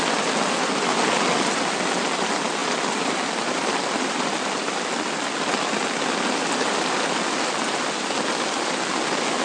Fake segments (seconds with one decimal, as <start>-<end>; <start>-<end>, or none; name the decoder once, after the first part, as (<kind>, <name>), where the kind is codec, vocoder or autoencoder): none